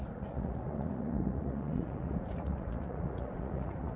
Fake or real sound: fake